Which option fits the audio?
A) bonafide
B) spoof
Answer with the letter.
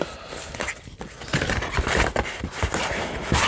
A